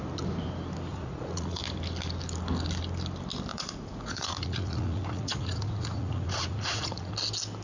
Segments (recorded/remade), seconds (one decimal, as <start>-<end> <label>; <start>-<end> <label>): 0.0-0.9 recorded; 0.9-1.6 remade; 1.6-3.5 recorded; 3.5-7.1 remade; 7.1-7.6 recorded